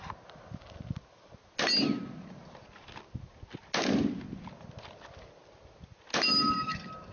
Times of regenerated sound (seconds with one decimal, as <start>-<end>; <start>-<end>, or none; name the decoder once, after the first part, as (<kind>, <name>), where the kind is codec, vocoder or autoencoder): none